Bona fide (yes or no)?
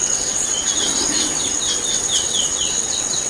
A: no